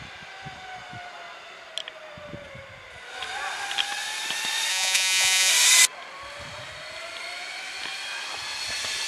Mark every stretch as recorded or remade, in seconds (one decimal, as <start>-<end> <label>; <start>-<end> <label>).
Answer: 0.0-4.7 recorded; 4.7-5.5 remade; 5.5-9.1 recorded